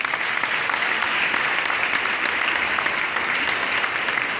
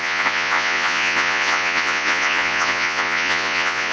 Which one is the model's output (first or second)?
second